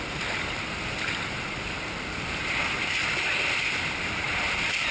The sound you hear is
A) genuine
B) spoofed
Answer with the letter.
A